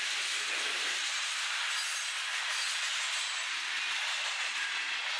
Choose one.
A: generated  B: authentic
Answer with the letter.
B